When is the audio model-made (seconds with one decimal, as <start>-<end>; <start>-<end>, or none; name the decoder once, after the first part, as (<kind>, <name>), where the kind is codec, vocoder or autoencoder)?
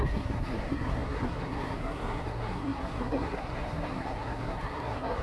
0.0-5.2 (codec, SNAC)